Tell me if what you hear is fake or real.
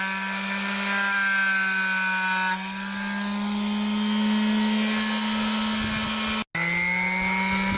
real